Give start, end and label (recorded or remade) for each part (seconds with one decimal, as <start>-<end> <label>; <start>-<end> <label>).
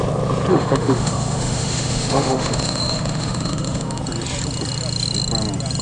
0.0-0.5 recorded; 0.5-4.0 remade; 4.0-5.8 recorded